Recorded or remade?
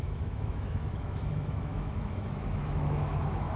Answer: remade